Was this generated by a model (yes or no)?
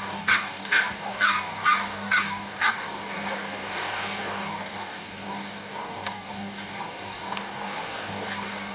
yes